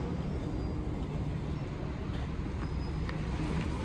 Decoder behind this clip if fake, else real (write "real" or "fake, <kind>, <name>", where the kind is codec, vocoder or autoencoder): real